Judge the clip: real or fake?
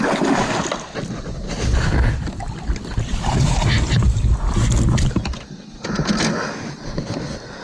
real